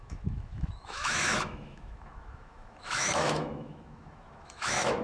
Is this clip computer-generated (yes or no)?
yes